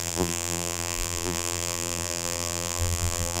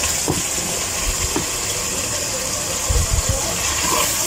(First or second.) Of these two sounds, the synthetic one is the first